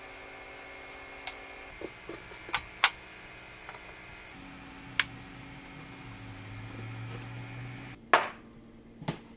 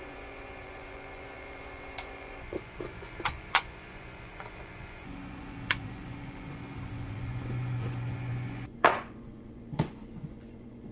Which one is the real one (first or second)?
first